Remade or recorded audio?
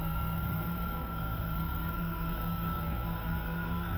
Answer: remade